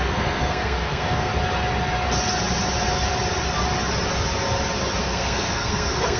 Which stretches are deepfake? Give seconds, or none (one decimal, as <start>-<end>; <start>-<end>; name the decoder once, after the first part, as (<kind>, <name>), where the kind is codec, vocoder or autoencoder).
0.0-1.3 (codec, SNAC); 5.0-6.2